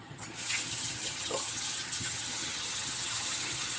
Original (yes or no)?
no